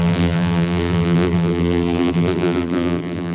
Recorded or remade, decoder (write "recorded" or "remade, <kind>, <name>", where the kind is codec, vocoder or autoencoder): remade, vocoder, BigVGAN v2